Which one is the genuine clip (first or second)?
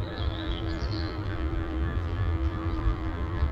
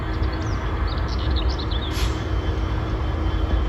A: second